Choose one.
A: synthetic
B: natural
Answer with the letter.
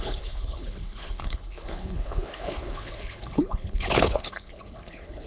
A